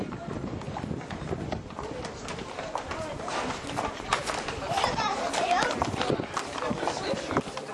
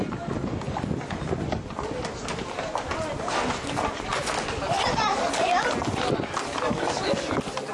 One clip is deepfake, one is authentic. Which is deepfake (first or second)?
first